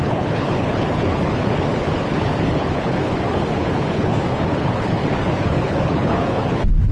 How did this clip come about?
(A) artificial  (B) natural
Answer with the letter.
A